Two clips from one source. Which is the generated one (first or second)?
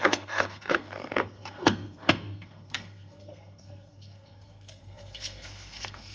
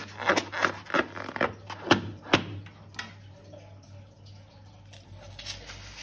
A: first